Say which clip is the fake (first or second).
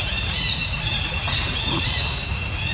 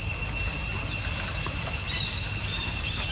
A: first